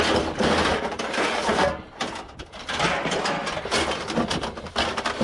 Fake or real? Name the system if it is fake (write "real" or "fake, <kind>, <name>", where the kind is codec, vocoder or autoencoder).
real